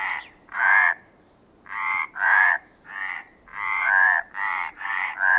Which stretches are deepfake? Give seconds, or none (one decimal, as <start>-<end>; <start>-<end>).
0.4-2.9; 3.5-5.4